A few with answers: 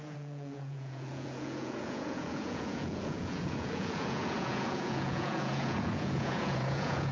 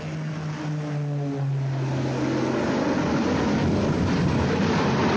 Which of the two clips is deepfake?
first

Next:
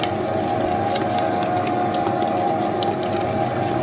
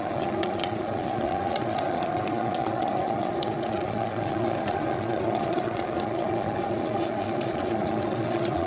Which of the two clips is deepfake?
second